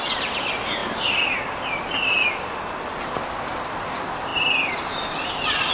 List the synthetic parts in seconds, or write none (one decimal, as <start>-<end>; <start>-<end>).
none